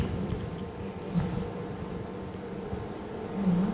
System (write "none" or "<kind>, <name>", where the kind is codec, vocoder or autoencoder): none